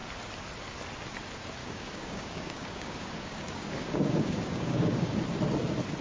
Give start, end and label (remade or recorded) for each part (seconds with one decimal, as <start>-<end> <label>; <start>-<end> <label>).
0.0-1.6 recorded; 1.6-5.2 remade; 5.2-6.0 recorded

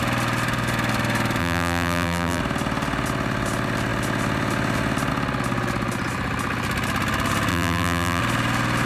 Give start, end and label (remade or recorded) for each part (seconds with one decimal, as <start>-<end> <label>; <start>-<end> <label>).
0.0-1.4 recorded; 1.4-2.4 remade; 2.4-7.5 recorded; 7.5-8.2 remade; 8.2-8.9 recorded

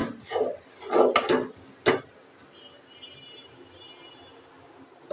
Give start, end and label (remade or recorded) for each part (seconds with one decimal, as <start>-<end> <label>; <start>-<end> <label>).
0.0-5.1 recorded

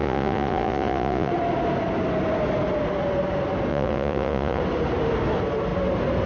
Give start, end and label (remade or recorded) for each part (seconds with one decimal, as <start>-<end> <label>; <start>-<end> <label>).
0.0-1.3 remade; 1.3-3.7 recorded; 3.7-4.6 remade; 4.6-6.3 recorded

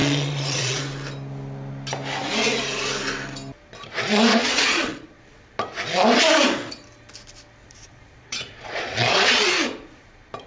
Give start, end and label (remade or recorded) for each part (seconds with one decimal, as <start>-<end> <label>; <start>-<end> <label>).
0.0-0.8 remade; 0.8-4.3 recorded; 4.3-5.5 remade; 5.5-7.6 recorded; 7.6-9.5 remade; 9.5-10.5 recorded